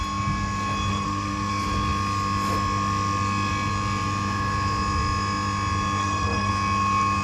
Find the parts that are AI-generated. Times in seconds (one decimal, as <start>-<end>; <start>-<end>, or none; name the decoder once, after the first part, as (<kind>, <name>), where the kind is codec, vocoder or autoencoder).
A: 0.9-1.5 (codec, SNAC); 6.0-6.5